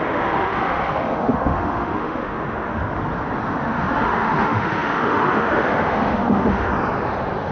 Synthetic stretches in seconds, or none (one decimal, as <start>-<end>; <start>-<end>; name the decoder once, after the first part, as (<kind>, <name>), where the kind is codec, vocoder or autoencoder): 0.0-2.8 (autoencoder, DAC-VAE); 3.6-6.7